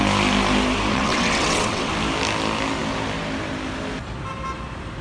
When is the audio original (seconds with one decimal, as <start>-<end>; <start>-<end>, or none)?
0.0-0.9; 1.9-5.0